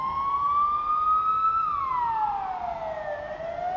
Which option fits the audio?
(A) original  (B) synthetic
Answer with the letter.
A